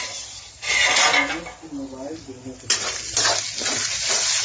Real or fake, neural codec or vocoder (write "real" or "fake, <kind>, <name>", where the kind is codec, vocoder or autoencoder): real